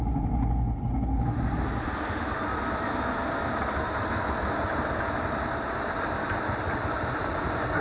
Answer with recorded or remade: recorded